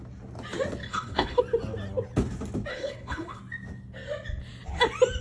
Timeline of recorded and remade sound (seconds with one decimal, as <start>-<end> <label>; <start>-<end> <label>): 0.0-0.8 recorded; 0.8-1.4 remade; 1.4-2.7 recorded; 2.7-3.4 remade; 3.4-5.2 recorded